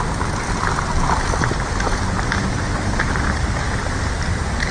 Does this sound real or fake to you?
real